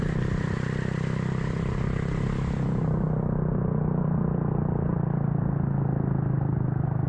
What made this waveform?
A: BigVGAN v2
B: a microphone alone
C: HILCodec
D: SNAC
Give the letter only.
B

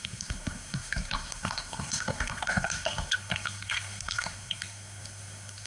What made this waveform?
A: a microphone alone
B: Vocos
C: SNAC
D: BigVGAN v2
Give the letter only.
C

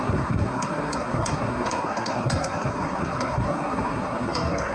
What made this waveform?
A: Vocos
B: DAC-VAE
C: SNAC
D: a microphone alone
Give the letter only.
C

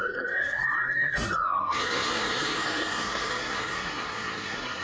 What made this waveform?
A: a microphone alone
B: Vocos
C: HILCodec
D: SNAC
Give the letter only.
D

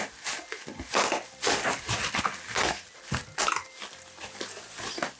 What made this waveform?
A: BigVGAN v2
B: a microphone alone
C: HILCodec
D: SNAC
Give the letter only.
B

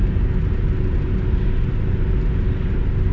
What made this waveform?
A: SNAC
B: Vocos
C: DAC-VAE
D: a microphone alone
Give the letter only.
D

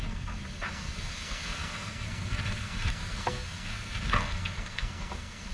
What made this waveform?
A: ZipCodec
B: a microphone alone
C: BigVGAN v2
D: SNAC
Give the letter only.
D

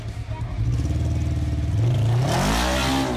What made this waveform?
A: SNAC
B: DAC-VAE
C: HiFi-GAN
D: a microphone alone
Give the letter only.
D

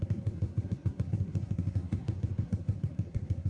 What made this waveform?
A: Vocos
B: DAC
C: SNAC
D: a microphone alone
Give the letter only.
C